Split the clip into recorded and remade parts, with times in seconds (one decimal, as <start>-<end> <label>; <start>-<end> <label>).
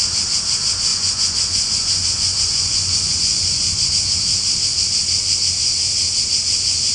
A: 0.0-0.9 recorded; 0.9-3.9 remade; 3.9-6.9 recorded